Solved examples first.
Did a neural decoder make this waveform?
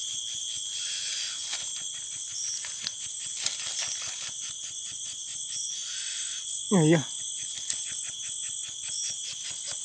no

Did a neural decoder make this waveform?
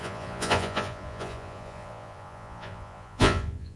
yes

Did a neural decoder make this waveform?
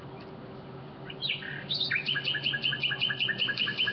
no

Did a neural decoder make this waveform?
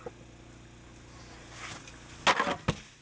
no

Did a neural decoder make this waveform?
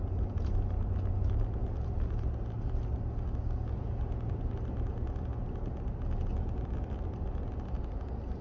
no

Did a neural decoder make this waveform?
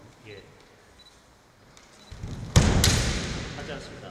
no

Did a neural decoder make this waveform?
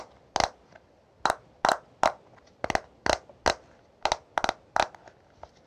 no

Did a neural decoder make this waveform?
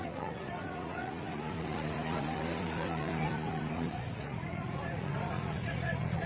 yes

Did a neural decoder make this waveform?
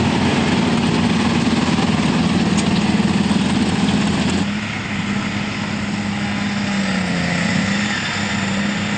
no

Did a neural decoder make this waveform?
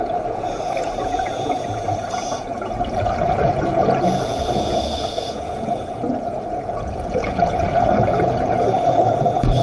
yes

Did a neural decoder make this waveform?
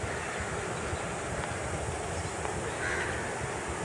no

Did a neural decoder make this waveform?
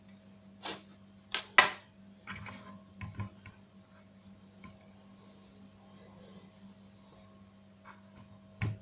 no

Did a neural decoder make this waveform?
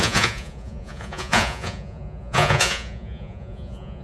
yes